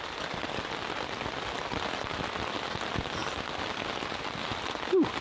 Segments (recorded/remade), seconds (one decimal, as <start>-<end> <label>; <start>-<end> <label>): 0.0-5.2 recorded